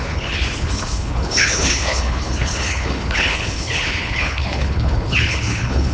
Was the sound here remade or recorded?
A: remade